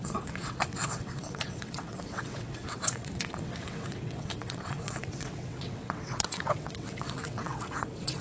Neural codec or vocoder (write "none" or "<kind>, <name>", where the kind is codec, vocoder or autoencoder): vocoder, WaveNeXt